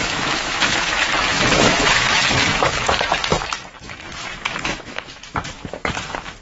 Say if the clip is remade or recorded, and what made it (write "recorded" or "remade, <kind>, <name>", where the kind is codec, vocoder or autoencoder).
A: remade, autoencoder, DAC-VAE